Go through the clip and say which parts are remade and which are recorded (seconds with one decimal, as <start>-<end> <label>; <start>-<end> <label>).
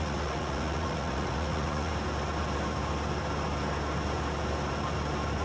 0.0-1.9 remade; 1.9-5.4 recorded